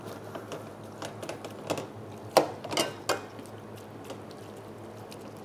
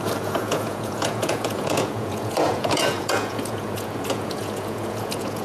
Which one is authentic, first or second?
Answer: first